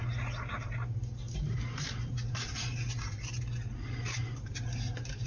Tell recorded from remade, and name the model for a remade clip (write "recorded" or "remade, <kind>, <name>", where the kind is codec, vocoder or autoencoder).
recorded